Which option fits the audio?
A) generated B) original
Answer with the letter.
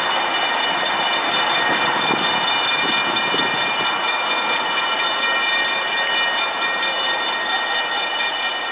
B